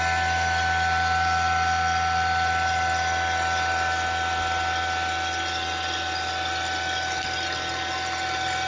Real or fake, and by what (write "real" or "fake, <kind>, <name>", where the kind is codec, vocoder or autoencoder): real